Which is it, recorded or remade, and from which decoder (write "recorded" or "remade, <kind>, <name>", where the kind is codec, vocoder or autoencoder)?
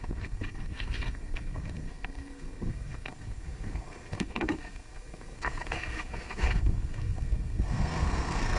remade, codec, SNAC